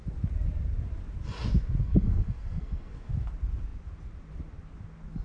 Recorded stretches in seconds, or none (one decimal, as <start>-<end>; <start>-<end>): 0.0-1.8; 3.1-5.2